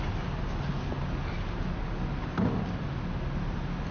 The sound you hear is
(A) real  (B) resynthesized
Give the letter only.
A